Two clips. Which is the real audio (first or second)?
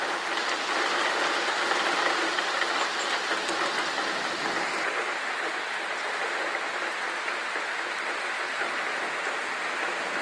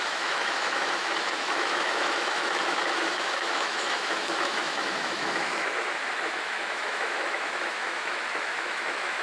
first